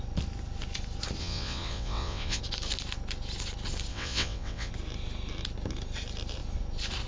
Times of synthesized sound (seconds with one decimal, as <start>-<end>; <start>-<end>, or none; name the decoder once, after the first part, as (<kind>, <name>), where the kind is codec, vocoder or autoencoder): 1.2-2.4 (vocoder, WaveNeXt); 3.9-4.7

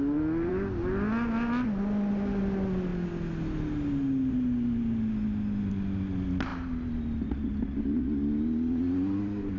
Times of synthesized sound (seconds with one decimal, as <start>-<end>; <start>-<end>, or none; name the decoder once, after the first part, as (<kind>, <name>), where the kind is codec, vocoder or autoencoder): none

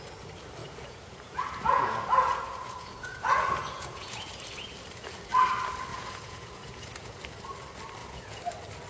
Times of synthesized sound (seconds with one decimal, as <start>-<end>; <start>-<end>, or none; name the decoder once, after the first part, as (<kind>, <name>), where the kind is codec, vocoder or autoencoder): 0.6-4.3 (vocoder, Vocos); 5.9-7.2; 8.0-8.5

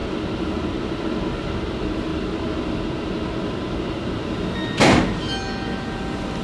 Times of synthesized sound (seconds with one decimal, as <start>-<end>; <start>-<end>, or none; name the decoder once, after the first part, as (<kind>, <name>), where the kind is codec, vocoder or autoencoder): none

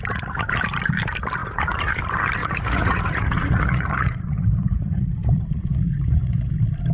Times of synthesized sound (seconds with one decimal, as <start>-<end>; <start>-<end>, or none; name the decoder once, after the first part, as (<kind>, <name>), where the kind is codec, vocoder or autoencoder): 1.4-2.0 (vocoder, Vocos); 2.4-6.5

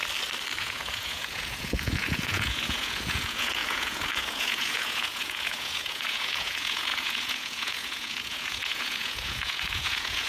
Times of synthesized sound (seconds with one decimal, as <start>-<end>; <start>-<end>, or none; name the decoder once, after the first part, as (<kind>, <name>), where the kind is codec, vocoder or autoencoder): 0.6-10.3 (vocoder, Vocos)